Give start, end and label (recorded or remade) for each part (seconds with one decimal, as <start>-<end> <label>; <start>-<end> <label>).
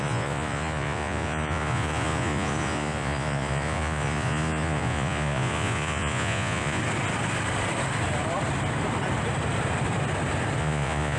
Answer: 0.0-6.8 remade; 6.8-10.6 recorded; 10.6-11.2 remade